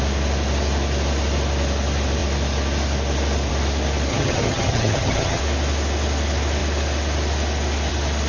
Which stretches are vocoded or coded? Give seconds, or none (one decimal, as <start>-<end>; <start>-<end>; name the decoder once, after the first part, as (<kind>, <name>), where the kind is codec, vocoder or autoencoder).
4.1-5.4 (vocoder, HiFi-GAN)